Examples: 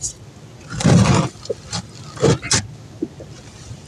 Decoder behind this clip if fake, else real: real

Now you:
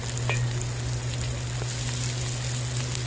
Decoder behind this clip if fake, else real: real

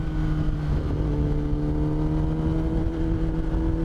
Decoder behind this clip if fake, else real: real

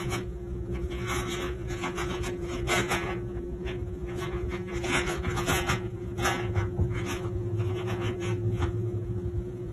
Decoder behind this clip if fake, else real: fake, vocoder, Vocos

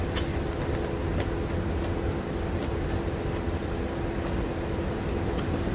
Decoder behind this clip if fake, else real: real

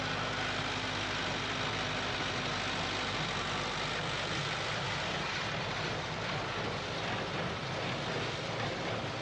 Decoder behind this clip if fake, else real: real